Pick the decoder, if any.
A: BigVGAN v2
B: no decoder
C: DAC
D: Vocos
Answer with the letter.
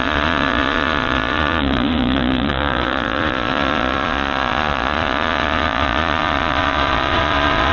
D